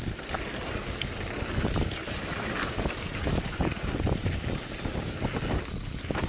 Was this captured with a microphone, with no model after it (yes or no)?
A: yes